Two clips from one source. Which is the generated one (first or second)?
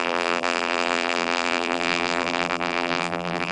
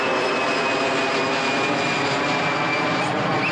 first